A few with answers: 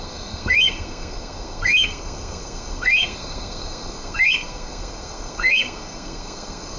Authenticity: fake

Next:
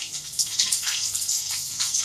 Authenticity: fake